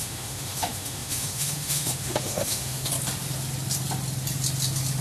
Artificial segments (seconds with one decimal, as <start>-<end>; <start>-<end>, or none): 0.0-2.9